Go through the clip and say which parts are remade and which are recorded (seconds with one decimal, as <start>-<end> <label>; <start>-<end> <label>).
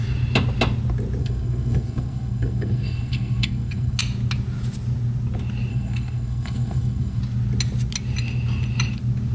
0.0-1.2 recorded; 1.2-4.0 remade; 4.0-5.7 recorded; 5.7-7.2 remade; 7.2-9.3 recorded